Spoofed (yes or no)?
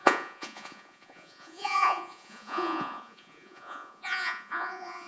yes